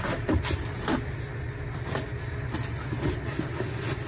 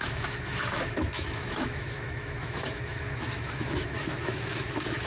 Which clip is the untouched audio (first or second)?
first